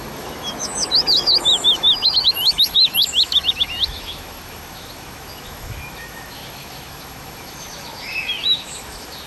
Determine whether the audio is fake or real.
fake